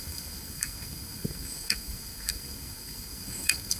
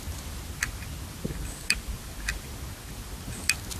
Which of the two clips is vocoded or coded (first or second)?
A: first